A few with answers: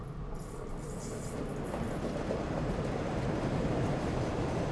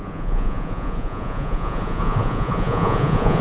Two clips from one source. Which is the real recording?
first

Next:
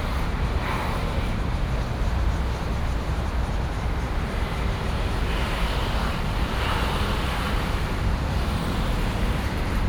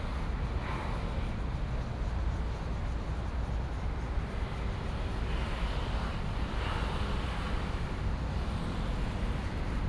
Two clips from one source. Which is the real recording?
second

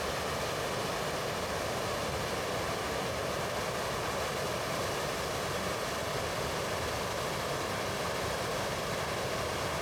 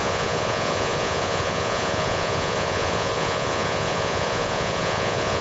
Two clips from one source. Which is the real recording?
first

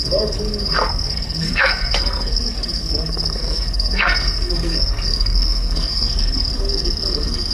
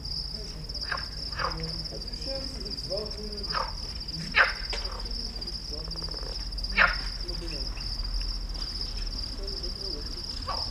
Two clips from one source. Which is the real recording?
second